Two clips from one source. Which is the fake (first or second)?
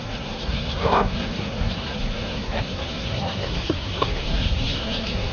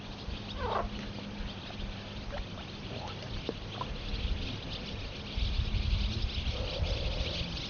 first